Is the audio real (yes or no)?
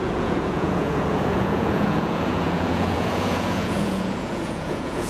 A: no